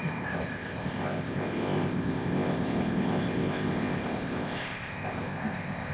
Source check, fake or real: fake